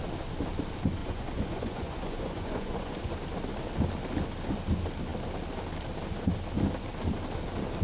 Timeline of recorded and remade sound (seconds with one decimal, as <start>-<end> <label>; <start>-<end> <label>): 0.0-1.0 recorded; 1.0-3.1 remade; 3.1-7.8 recorded